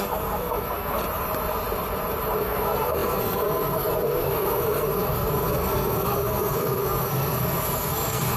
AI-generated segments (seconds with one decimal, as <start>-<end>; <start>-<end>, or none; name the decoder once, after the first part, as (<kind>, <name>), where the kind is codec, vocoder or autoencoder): 0.0-1.0 (codec, SNAC); 2.4-8.4